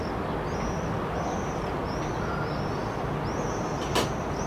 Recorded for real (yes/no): yes